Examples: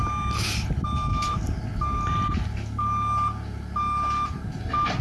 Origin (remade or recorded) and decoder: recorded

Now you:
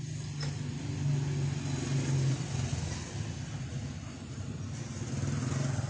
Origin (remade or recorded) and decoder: recorded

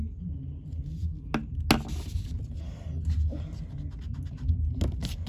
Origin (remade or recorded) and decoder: recorded